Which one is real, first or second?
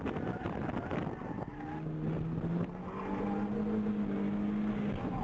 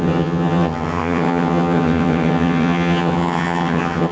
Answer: first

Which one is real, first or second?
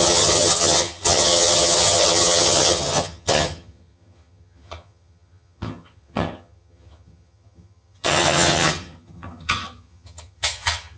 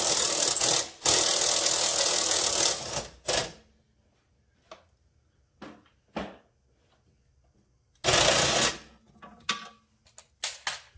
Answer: second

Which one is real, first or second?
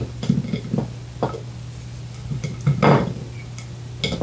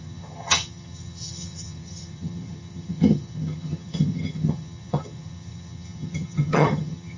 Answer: first